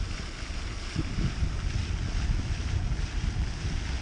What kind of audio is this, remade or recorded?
recorded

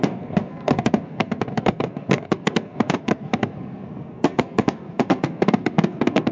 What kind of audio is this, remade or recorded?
remade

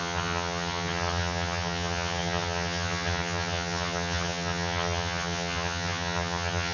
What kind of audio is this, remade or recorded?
remade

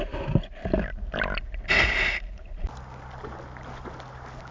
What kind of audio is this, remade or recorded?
recorded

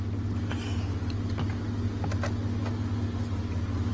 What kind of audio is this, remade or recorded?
recorded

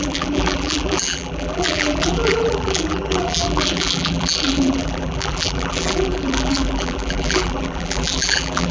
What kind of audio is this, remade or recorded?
remade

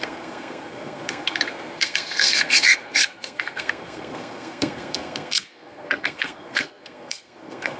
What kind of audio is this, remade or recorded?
remade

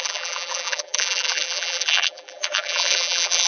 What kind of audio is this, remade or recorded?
remade